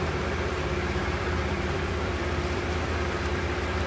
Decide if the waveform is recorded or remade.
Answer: remade